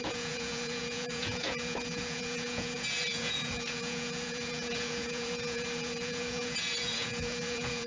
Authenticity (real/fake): fake